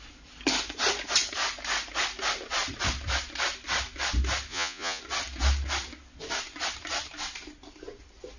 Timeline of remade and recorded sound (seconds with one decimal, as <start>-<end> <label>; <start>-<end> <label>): 0.0-4.5 recorded; 4.5-5.0 remade; 5.0-8.4 recorded